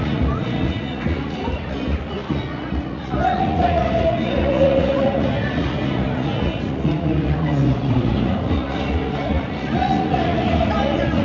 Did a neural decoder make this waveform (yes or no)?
yes